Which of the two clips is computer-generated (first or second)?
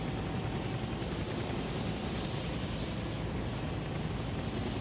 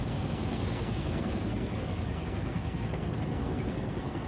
second